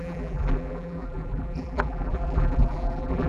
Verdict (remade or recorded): remade